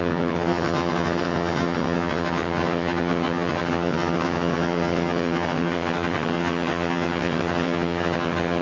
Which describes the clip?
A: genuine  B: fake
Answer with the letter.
B